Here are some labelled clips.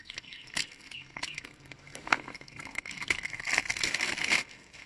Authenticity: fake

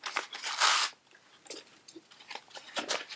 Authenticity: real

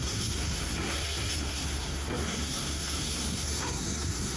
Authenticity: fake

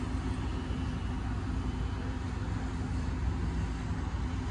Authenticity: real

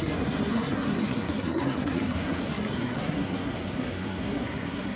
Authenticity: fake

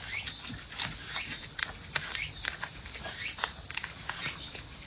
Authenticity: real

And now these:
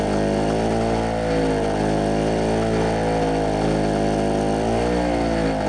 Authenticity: real